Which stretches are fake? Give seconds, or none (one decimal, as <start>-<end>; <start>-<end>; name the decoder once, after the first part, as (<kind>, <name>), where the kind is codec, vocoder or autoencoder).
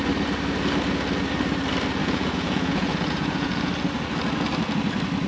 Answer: 2.0-3.7 (vocoder, Vocos)